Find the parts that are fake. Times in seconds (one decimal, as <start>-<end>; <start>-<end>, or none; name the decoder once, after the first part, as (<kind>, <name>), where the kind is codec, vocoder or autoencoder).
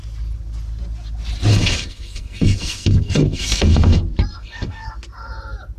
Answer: 1.5-4.0 (codec, SNAC); 4.4-4.9